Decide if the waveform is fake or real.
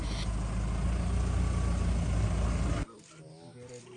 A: real